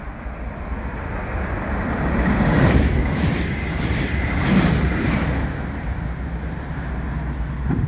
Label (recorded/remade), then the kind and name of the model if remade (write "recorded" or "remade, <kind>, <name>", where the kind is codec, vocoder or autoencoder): recorded